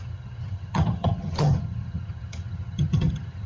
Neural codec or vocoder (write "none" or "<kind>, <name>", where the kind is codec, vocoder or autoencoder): vocoder, HiFi-GAN